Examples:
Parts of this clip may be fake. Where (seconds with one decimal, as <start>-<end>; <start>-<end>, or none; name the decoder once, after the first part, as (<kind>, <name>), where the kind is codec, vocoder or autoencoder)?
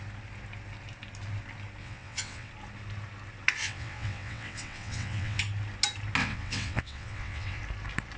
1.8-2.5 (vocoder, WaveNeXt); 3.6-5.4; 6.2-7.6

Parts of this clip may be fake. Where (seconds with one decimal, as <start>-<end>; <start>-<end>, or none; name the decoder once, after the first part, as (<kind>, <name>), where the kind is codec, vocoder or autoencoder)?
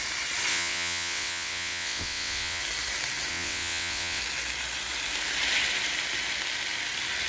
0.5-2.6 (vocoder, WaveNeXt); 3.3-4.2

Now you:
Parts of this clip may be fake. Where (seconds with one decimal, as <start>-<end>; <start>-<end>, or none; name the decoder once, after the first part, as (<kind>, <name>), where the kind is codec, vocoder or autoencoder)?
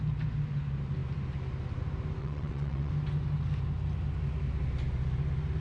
2.2-2.9 (vocoder, WaveNeXt)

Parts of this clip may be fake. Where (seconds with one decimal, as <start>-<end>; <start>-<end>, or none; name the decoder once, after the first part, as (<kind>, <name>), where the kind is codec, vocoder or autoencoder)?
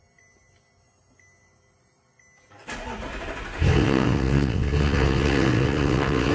3.7-6.3 (vocoder, WaveNeXt)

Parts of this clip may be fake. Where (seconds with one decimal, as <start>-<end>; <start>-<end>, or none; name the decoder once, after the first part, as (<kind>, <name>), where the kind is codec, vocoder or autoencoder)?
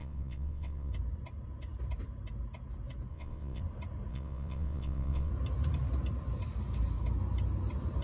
0.0-0.9 (vocoder, WaveNeXt); 3.1-3.6; 4.1-5.3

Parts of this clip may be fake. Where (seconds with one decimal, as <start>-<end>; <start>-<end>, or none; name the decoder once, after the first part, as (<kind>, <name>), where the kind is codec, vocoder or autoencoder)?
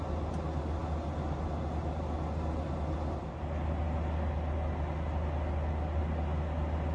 none